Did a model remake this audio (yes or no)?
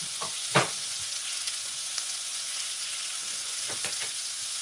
yes